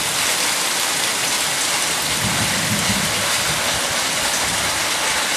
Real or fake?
real